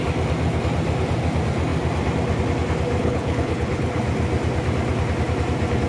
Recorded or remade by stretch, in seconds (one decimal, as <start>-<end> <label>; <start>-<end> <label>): 0.0-3.0 recorded; 3.0-4.0 remade; 4.0-5.9 recorded

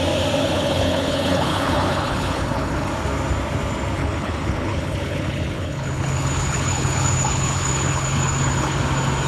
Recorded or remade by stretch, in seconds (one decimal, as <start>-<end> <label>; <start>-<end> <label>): 0.0-0.4 recorded; 0.4-2.9 remade; 2.9-4.0 recorded; 4.0-8.8 remade; 8.8-9.3 recorded

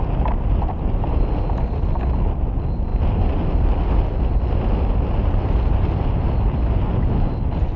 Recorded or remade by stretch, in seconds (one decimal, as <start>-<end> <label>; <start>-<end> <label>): 0.0-7.8 recorded

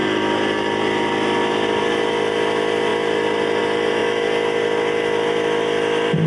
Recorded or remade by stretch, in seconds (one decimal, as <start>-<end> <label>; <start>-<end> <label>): 0.0-6.3 recorded

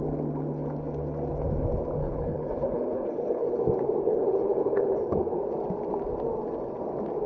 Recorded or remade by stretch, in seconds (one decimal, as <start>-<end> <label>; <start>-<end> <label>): 0.0-2.0 recorded; 2.0-3.6 remade; 3.6-4.0 recorded; 4.0-5.4 remade; 5.4-7.3 recorded